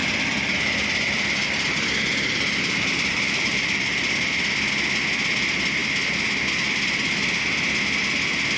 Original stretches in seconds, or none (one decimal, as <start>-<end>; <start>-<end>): 4.7-8.6

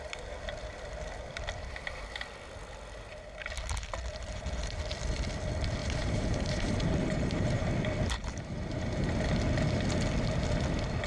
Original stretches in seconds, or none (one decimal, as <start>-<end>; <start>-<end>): 0.0-4.1; 4.8-5.8; 7.7-8.2; 9.3-11.1